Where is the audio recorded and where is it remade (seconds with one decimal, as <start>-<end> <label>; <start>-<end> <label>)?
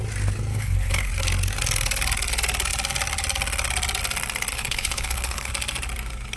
0.0-0.5 recorded; 0.5-1.1 remade; 1.1-4.5 recorded; 4.5-5.5 remade; 5.5-6.4 recorded